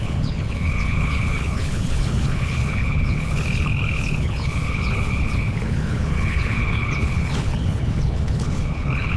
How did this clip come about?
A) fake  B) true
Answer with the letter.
A